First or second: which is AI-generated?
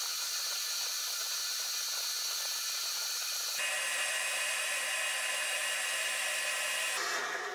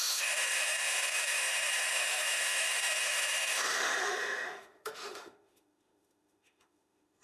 second